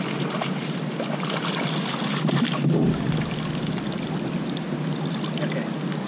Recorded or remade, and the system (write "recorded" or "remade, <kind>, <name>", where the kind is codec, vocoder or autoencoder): recorded